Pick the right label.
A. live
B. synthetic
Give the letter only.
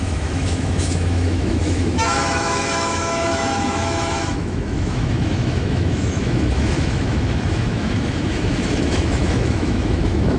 B